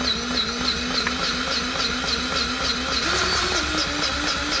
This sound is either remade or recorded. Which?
recorded